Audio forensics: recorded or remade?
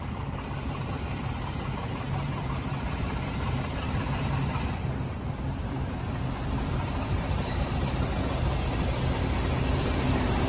remade